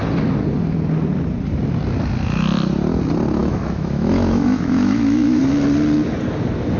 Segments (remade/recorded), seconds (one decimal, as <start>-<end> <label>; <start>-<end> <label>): 0.0-3.4 recorded; 3.4-5.4 remade; 5.4-6.8 recorded